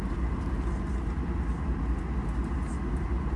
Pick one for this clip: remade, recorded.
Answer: recorded